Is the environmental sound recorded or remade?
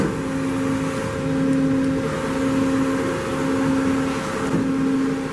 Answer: recorded